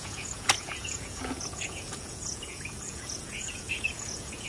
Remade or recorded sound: remade